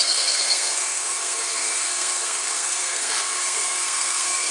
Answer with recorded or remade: remade